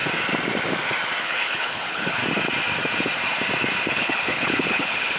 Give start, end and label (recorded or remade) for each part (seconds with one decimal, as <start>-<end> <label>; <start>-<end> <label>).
0.0-1.2 recorded; 1.2-2.2 remade; 2.2-3.9 recorded; 3.9-5.2 remade